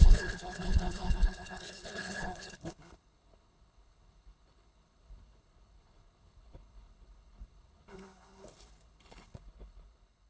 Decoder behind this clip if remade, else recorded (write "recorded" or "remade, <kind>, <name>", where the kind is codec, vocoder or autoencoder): remade, codec, HILCodec